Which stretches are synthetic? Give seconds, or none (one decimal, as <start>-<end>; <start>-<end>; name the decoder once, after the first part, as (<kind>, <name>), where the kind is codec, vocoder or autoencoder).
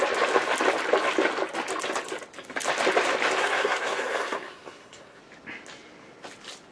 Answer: 3.4-5.2 (codec, SNAC)